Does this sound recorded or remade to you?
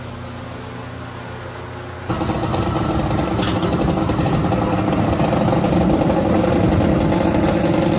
recorded